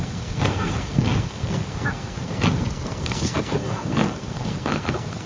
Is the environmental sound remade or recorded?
remade